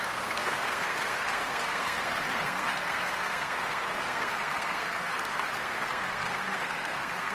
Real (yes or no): no